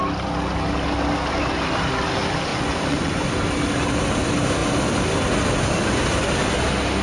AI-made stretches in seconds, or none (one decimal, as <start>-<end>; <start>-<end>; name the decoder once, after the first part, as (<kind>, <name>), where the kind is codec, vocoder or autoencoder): 2.5-3.2 (vocoder, Vocos)